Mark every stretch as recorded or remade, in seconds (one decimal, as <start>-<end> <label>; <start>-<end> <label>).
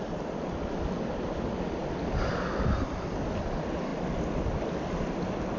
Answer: 0.0-5.6 recorded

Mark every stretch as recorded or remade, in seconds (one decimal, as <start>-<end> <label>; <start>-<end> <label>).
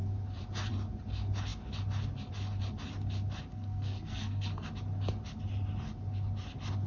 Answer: 0.0-3.5 recorded; 3.5-4.7 remade; 4.7-6.9 recorded